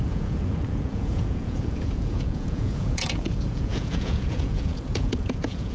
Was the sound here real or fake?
fake